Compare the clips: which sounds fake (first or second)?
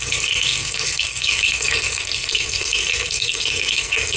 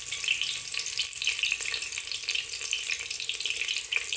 first